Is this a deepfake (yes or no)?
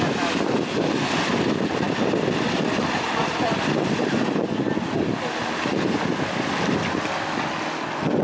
no